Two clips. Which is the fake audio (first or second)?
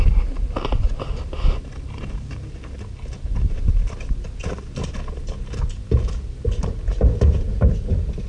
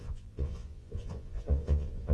second